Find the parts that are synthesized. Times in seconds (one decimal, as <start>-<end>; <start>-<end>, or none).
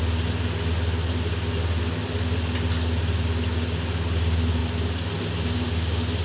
none